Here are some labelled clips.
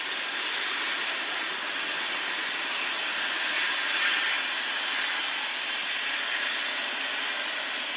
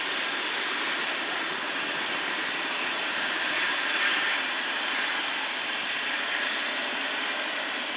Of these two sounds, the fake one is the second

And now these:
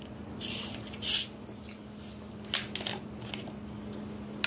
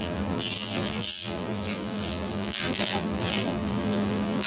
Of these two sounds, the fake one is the second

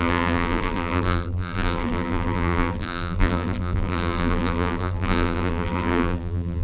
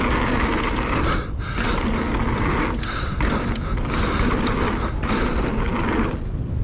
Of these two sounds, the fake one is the first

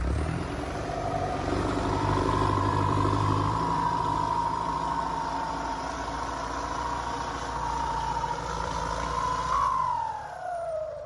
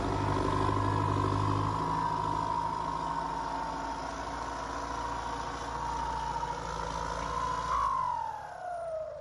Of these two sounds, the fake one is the first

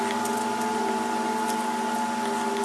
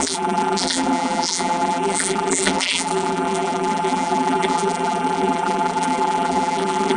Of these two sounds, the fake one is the second